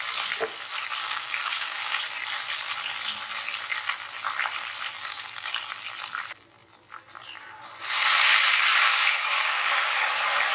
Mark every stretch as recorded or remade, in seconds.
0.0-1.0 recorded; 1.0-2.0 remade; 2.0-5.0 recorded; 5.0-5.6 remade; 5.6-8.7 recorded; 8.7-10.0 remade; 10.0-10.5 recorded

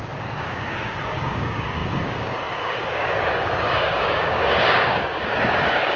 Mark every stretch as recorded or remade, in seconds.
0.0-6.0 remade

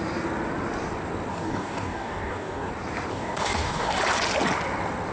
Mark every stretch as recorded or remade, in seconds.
0.0-1.3 recorded; 1.3-2.7 remade; 2.7-3.1 recorded; 3.1-4.0 remade; 4.0-5.1 recorded